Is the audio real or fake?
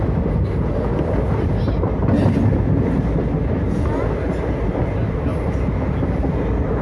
real